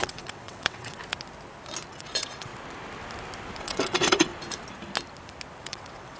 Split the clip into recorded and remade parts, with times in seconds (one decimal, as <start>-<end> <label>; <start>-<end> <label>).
0.0-1.0 remade; 1.0-1.9 recorded; 1.9-2.5 remade; 2.5-3.6 recorded; 3.6-4.3 remade; 4.3-5.6 recorded; 5.6-6.2 remade